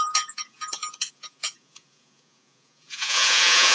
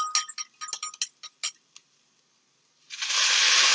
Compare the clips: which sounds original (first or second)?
second